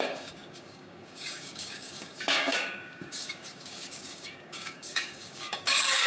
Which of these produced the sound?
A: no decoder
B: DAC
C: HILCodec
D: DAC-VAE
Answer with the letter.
B